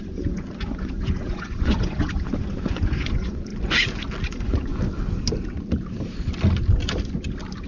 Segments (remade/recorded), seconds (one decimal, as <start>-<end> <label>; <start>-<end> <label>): 0.0-3.5 remade; 3.5-4.2 recorded; 4.2-4.7 remade; 4.7-7.7 recorded